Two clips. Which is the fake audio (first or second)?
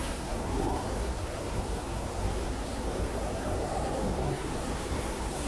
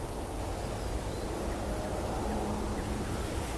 first